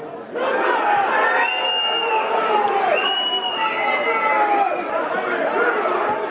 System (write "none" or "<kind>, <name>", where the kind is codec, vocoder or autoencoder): none